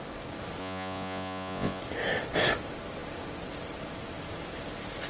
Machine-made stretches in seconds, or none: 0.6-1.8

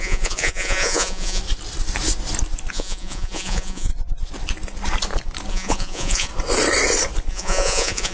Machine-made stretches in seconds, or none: 0.0-1.4; 2.7-3.9; 5.5-6.3; 7.3-8.1